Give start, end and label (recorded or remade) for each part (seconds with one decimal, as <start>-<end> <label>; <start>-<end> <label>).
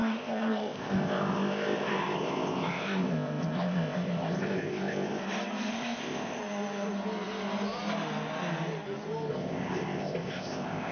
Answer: 0.0-5.2 remade; 5.2-5.7 recorded; 5.7-6.4 remade; 6.4-9.3 recorded; 9.3-10.9 remade